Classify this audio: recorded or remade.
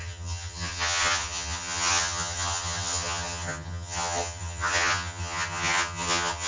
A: remade